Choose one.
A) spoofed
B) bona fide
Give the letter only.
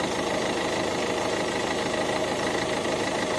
B